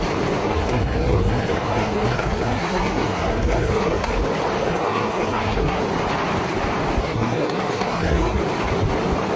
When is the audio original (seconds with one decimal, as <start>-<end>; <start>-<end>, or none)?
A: 0.0-0.4; 4.1-4.6; 5.8-7.0; 8.4-9.4